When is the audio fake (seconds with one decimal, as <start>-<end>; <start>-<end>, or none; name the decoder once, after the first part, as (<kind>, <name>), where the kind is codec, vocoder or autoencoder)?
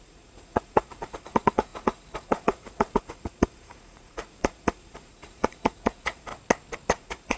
0.0-6.3 (vocoder, Vocos); 6.9-7.4